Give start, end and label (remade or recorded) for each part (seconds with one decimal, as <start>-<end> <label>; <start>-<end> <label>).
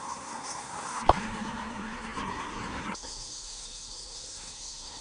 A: 0.0-5.0 remade